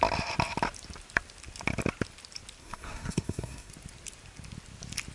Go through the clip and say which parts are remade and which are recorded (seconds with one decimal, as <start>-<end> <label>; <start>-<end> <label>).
0.0-2.6 recorded; 2.6-3.7 remade; 3.7-5.1 recorded